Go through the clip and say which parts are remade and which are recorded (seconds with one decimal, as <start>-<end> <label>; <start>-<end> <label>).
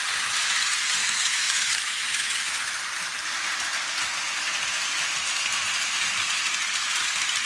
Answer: 0.0-1.0 recorded; 1.0-2.8 remade; 2.8-7.5 recorded